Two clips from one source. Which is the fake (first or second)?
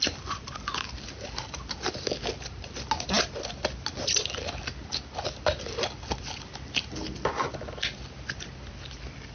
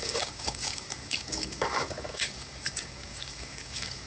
second